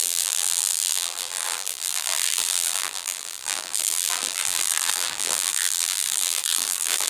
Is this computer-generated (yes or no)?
yes